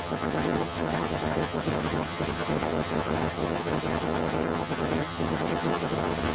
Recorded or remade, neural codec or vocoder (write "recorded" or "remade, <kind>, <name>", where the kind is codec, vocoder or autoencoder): remade, vocoder, HiFi-GAN